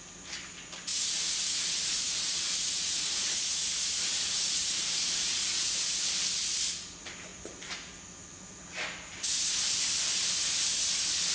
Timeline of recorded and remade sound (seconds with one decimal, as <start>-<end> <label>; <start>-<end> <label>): 0.0-0.9 recorded; 0.9-6.1 remade; 6.1-11.3 recorded